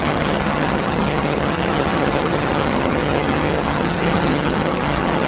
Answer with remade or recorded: remade